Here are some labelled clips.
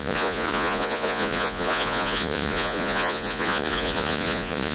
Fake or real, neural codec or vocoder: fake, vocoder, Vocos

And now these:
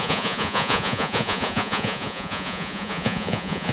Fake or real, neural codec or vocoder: fake, vocoder, Vocos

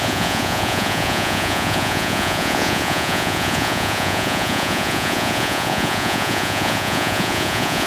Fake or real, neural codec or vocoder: fake, vocoder, Vocos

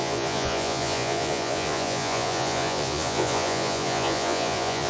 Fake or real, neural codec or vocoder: fake, vocoder, Vocos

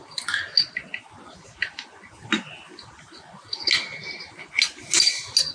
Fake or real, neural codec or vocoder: real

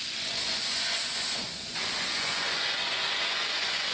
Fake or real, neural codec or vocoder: fake, vocoder, Vocos